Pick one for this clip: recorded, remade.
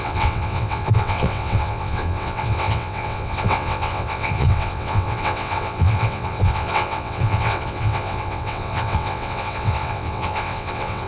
remade